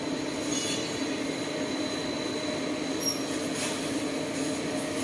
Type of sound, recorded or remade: recorded